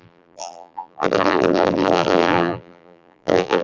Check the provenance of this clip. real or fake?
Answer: fake